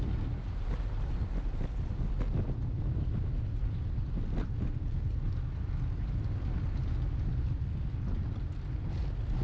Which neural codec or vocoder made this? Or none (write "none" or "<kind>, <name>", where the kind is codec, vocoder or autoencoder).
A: none